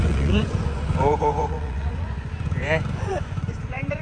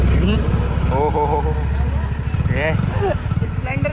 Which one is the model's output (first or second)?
first